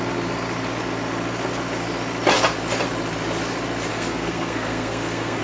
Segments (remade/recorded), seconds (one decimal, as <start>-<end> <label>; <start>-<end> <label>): 0.0-3.9 recorded; 3.9-5.4 remade